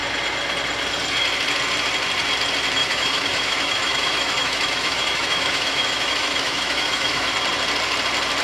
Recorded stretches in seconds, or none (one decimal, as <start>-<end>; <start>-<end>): 0.0-2.8; 7.3-8.4